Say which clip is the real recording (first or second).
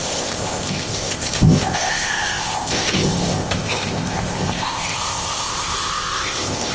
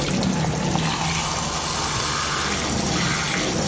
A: second